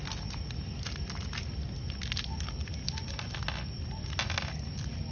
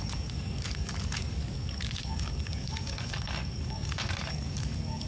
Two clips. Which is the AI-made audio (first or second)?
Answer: second